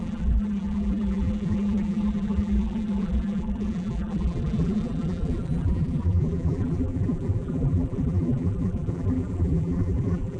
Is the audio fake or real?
fake